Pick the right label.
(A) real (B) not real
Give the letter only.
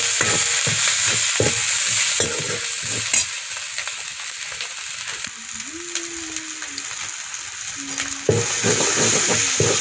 A